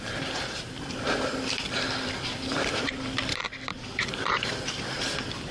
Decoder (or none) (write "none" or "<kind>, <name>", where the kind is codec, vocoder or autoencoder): vocoder, BigVGAN v2